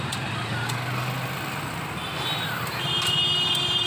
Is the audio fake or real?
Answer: real